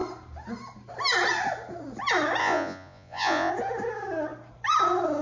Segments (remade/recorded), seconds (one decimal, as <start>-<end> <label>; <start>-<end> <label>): 0.0-2.4 recorded; 2.4-3.5 remade; 3.5-5.2 recorded